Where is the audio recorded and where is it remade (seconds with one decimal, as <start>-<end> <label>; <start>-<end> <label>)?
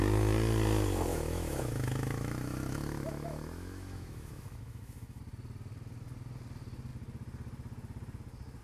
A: 0.0-1.1 recorded; 1.1-5.2 remade; 5.2-8.6 recorded